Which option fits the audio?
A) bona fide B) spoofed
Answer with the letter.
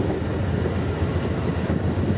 A